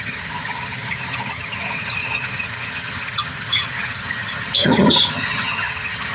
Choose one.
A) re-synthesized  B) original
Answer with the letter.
A